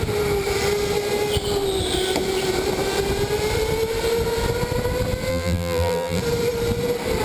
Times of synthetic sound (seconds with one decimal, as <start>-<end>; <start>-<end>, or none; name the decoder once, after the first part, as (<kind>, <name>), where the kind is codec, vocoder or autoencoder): 5.3-6.2 (vocoder, BigVGAN v2)